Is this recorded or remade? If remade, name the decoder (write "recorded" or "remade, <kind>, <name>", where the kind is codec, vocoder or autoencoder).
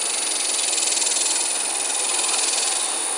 recorded